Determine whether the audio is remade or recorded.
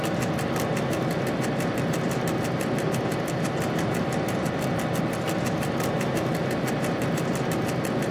recorded